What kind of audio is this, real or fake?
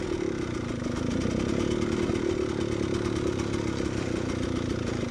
real